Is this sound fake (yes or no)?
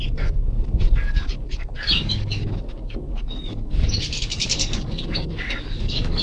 yes